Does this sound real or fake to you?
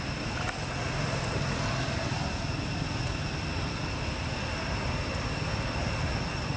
real